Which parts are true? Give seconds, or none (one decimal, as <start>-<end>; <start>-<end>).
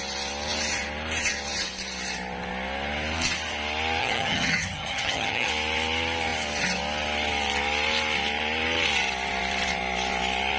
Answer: 0.0-4.0; 5.5-10.6